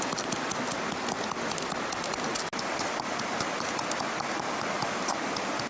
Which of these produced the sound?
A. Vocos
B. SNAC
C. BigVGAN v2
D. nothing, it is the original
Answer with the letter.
D